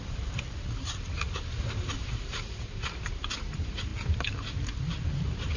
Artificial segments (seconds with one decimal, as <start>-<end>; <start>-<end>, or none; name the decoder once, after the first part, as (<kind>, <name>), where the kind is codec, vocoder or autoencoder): 0.0-3.9 (vocoder, BigVGAN v2); 5.1-5.6